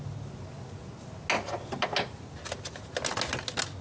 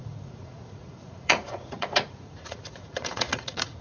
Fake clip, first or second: second